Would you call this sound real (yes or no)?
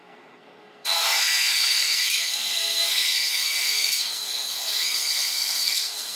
no